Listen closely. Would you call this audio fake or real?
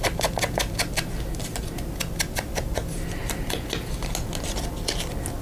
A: real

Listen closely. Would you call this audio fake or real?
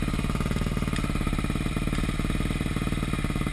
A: real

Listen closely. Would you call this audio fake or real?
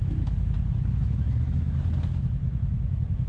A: fake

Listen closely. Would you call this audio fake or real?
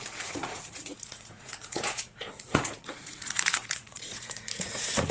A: fake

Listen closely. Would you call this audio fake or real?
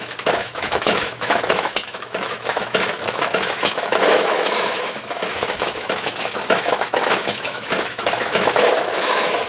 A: fake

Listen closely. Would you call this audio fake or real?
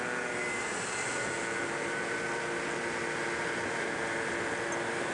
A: real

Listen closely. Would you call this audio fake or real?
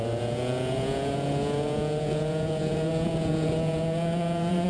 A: fake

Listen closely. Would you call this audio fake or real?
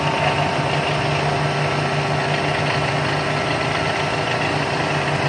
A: real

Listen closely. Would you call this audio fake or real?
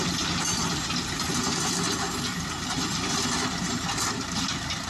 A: real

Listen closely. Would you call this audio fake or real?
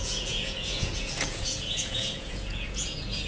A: fake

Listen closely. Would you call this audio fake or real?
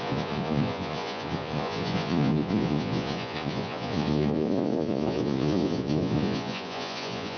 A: fake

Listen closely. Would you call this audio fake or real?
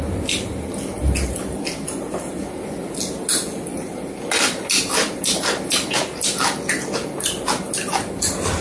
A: real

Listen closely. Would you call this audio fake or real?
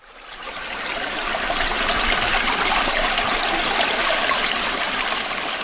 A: real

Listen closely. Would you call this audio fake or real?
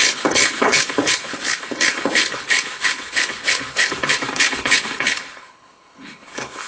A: fake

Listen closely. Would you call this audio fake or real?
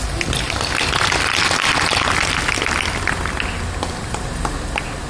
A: real